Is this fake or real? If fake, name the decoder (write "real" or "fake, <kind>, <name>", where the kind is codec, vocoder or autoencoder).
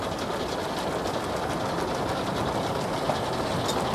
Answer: real